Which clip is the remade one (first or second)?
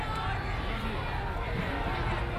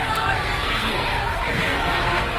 second